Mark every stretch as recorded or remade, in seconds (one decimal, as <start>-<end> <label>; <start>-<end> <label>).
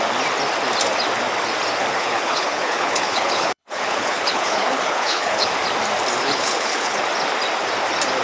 0.0-2.0 recorded; 2.0-5.5 remade; 5.5-6.2 recorded; 6.2-7.0 remade; 7.0-8.2 recorded